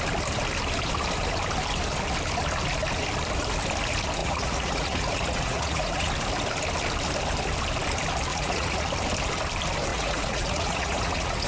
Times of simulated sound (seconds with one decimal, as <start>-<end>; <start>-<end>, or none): 4.2-6.1; 8.3-8.9; 9.9-11.5